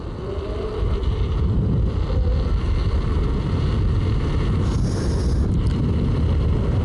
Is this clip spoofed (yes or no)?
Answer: no